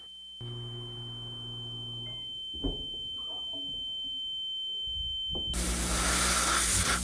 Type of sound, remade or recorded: recorded